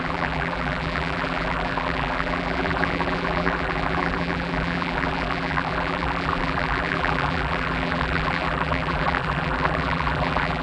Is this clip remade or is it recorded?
remade